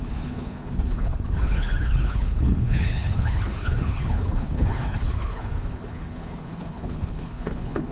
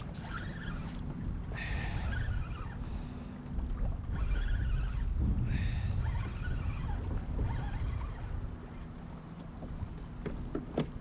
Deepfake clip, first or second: first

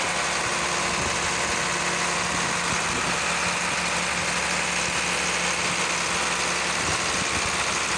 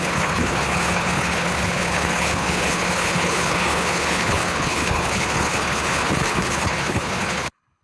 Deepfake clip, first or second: second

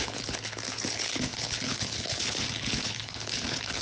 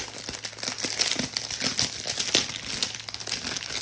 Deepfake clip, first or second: first